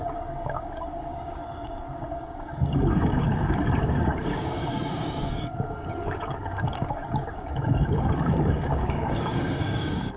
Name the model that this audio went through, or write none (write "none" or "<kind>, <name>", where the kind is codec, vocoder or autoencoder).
codec, DAC